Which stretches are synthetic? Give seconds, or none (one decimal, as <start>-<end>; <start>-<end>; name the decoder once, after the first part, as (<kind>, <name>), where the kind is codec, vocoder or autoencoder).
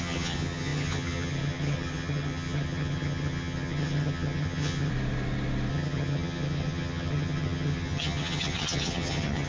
0.0-4.9 (vocoder, HiFi-GAN); 5.7-9.5